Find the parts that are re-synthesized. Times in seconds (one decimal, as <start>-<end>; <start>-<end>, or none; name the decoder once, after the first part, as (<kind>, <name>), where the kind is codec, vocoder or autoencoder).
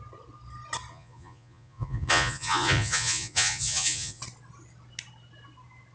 0.9-4.2 (vocoder, Vocos)